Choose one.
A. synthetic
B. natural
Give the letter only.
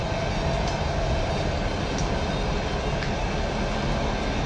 B